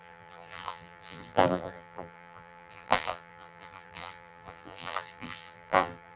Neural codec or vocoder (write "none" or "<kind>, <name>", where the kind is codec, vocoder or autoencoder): vocoder, BigVGAN v2